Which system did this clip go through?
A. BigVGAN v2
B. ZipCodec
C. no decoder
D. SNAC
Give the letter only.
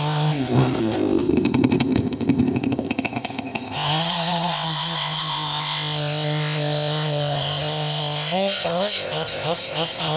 B